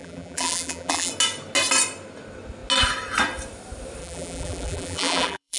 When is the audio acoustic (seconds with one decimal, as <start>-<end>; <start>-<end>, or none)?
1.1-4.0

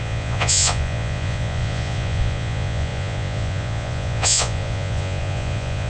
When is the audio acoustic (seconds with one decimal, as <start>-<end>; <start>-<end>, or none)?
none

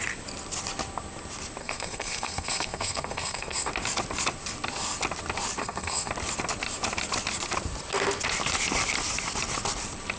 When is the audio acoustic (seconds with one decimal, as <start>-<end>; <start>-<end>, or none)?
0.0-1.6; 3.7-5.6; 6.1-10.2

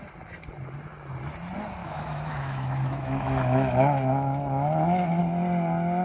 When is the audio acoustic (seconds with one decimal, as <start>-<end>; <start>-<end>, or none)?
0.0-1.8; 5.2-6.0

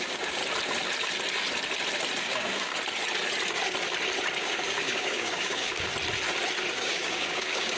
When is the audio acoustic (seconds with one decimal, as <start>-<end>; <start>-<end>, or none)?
0.4-2.2; 2.7-4.4; 5.9-6.7

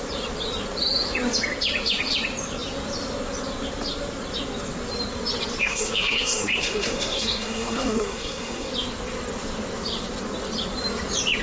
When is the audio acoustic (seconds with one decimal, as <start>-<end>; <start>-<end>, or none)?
0.0-5.6; 8.7-11.4